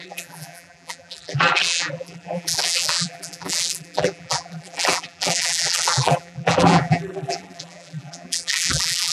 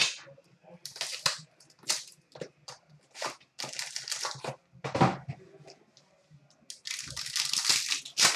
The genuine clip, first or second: second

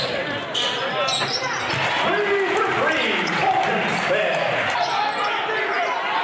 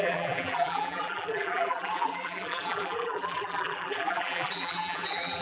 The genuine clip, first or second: first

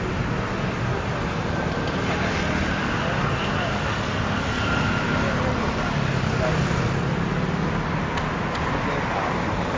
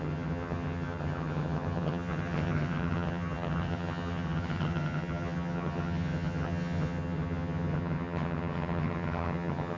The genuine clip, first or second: first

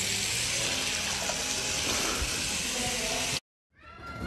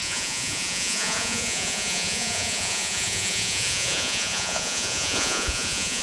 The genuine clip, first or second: first